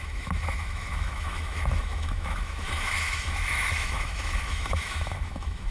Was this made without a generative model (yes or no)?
no